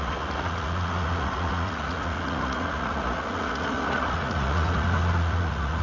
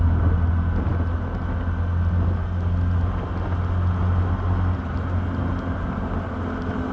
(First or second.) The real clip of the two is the second